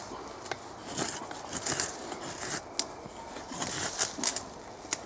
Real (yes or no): yes